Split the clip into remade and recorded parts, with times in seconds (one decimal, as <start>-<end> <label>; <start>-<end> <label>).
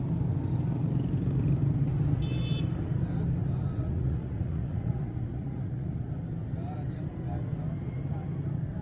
0.0-3.7 recorded; 3.7-6.1 remade; 6.1-8.8 recorded